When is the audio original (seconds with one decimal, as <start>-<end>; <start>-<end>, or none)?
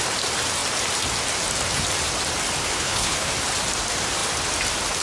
0.0-2.6; 3.3-5.0